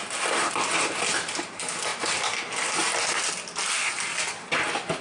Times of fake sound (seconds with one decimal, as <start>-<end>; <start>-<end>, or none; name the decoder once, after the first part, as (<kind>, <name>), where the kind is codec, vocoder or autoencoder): none